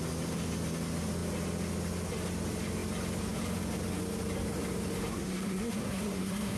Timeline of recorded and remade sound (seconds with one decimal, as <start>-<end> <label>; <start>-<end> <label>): 0.0-5.1 recorded; 5.1-6.6 remade